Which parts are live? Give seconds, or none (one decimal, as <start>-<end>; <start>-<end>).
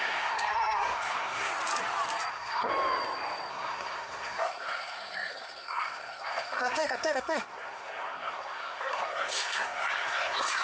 1.5-2.3; 2.7-3.5